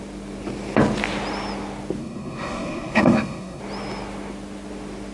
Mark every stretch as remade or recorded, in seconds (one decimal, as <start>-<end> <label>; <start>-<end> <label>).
0.0-2.0 recorded; 2.0-3.6 remade; 3.6-5.1 recorded